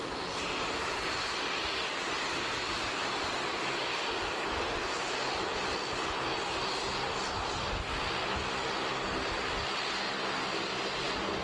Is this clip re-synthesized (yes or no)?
no